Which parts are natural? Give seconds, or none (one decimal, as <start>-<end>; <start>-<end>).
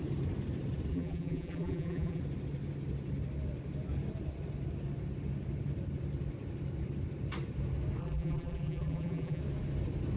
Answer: 0.0-0.9; 2.2-8.0; 9.4-10.2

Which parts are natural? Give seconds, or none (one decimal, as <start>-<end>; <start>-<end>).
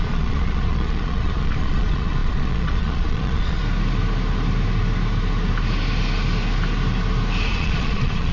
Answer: 3.6-7.5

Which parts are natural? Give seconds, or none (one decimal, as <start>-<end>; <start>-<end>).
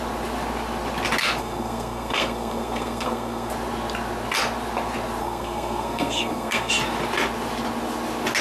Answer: 0.0-1.4; 3.5-5.2; 6.7-8.4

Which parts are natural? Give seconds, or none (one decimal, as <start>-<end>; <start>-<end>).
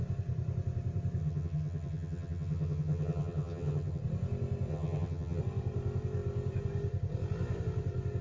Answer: 0.0-1.2; 4.0-4.7; 5.4-8.2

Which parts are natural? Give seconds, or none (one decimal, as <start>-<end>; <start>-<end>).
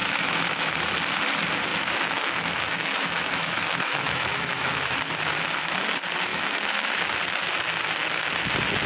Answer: 0.7-1.7; 4.9-6.3; 7.0-8.9